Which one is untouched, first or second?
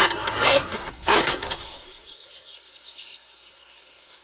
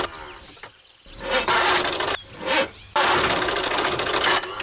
second